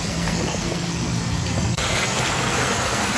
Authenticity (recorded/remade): remade